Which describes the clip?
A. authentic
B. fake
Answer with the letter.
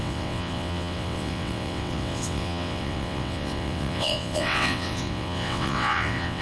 B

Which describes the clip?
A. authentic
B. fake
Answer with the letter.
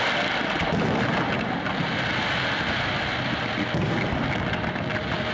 A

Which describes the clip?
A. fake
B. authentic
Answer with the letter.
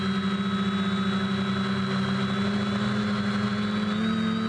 B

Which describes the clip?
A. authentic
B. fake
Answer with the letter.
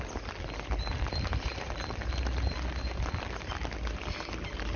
A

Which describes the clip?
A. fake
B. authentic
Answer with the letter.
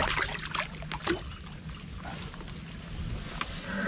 B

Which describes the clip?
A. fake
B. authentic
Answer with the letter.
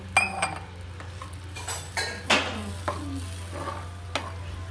B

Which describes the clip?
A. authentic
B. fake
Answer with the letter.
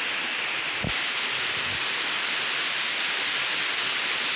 A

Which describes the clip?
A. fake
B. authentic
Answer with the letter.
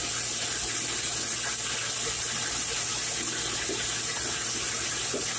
B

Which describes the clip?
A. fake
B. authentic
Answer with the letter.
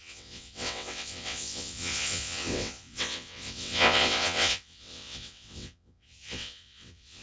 A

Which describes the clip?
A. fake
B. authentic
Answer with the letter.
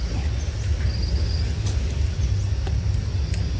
B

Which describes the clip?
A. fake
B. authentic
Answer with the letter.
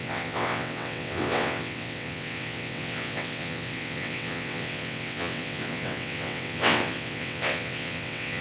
A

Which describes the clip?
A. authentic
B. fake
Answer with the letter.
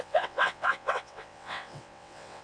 B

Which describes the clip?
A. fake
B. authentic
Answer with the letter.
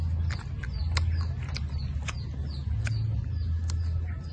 B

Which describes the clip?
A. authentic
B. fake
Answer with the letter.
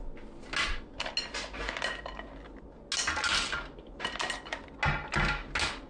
A